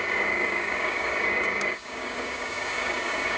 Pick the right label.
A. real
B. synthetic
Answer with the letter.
B